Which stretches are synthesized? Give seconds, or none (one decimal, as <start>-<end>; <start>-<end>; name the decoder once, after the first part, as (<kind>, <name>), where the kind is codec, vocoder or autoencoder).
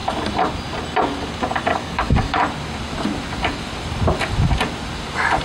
1.7-2.4 (codec, DAC)